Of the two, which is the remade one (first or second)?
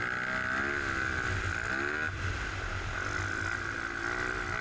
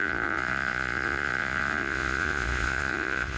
second